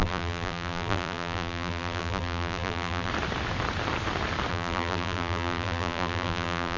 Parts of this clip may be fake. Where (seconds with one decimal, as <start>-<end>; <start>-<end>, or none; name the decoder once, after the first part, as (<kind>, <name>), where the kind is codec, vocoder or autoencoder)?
0.0-3.1 (vocoder, BigVGAN v2); 4.5-6.8